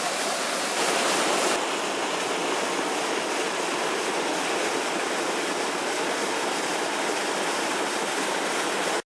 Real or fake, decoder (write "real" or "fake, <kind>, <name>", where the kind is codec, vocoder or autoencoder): real